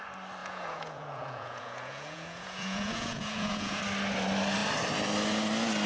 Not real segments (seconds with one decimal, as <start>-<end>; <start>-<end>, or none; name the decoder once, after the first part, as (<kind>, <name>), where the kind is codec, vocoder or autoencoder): 0.4-3.8 (vocoder, Vocos)